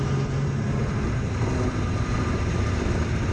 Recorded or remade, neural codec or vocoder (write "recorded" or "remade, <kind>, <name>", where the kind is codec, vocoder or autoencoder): remade, vocoder, BigVGAN v2